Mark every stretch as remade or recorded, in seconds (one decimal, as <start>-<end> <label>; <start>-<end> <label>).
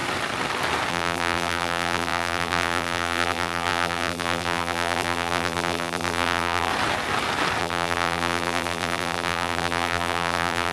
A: 0.0-0.9 recorded; 0.9-6.7 remade; 6.7-7.6 recorded; 7.6-10.7 remade